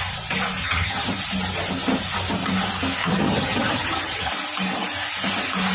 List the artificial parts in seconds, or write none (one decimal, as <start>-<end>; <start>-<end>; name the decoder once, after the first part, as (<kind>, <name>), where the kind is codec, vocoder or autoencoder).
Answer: 0.6-1.1 (vocoder, HiFi-GAN); 3.0-4.3